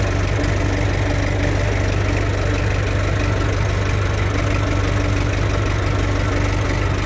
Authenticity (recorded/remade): recorded